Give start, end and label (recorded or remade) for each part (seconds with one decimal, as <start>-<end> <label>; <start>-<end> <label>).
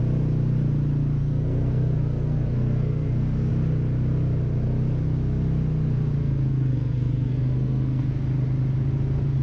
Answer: 0.0-1.2 recorded; 1.2-3.5 remade; 3.5-6.2 recorded; 6.2-8.2 remade; 8.2-9.4 recorded